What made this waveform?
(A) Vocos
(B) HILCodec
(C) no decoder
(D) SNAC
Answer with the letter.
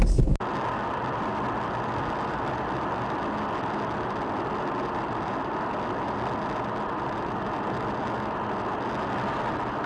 C